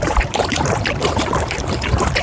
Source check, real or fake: fake